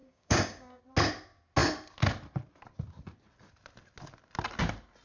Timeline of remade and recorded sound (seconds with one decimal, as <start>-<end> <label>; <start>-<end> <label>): 0.0-0.8 remade; 0.8-5.0 recorded